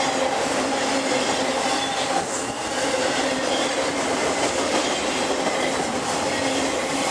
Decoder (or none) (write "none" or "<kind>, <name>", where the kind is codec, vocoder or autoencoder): none